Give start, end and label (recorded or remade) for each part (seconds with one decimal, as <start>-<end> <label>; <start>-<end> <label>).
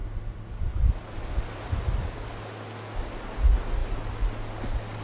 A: 0.0-3.0 remade; 3.0-5.0 recorded